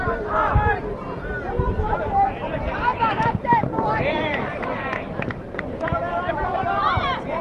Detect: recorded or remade remade